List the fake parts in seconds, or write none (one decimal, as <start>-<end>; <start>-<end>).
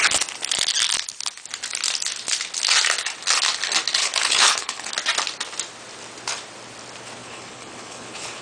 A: 4.0-4.9; 7.2-8.4